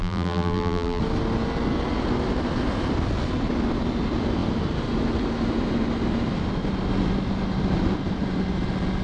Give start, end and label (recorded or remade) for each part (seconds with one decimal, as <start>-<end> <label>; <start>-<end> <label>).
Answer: 0.0-1.0 remade; 1.0-9.0 recorded